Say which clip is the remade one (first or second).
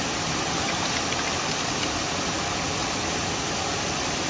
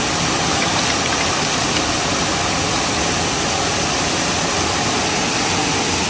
first